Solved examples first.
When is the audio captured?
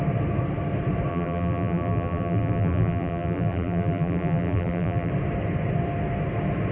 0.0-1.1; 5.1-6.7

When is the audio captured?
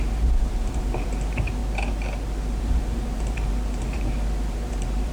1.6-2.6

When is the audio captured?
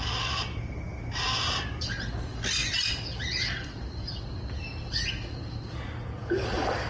0.0-2.6; 3.8-6.2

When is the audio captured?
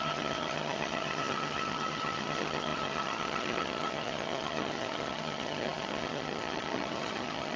none